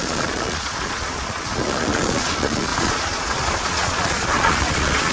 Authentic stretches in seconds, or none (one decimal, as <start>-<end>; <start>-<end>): none